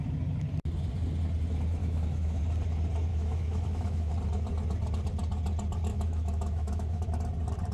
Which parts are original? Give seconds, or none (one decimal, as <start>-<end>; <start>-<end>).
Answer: 0.0-1.8; 2.4-3.1; 4.1-5.9; 7.1-7.7